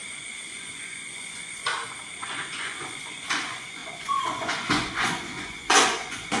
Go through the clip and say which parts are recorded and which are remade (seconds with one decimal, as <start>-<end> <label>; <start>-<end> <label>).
0.0-1.7 remade; 1.7-2.2 recorded; 2.2-6.4 remade